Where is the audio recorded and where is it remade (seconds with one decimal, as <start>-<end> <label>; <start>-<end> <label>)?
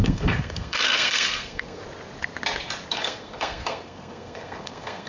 0.0-1.8 remade; 1.8-2.9 recorded; 2.9-5.1 remade